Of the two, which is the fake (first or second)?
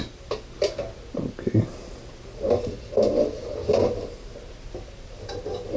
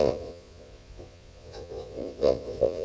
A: second